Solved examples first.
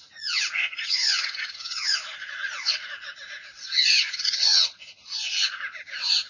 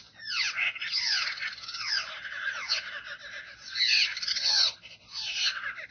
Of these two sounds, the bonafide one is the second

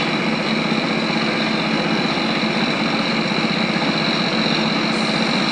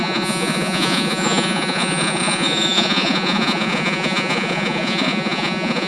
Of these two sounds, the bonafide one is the first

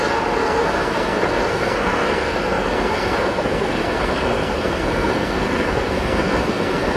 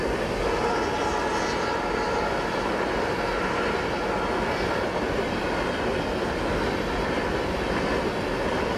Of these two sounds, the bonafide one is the second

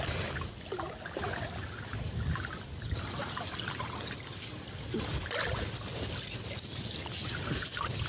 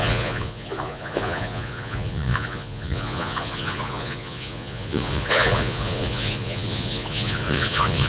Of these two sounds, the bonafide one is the first